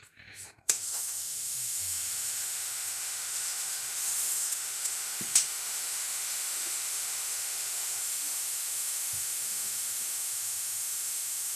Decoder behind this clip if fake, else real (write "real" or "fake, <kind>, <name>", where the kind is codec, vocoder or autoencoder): fake, autoencoder, DAC-VAE